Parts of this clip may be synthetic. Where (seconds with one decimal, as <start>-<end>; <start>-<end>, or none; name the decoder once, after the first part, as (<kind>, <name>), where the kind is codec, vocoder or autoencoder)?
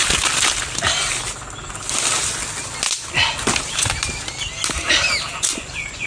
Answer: 5.3-6.1 (vocoder, Vocos)